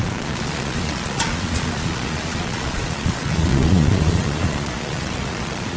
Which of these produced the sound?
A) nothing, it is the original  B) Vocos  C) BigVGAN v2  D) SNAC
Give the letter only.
B